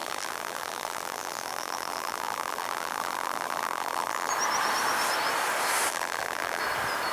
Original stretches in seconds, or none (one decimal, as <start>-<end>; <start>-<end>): 4.3-5.9; 6.6-7.1